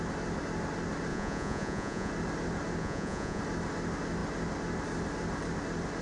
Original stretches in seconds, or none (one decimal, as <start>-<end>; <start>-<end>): 0.0-1.1; 2.1-2.8; 3.4-6.0